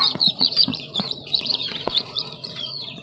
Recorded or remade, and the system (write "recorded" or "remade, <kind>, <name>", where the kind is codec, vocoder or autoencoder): remade, vocoder, Vocos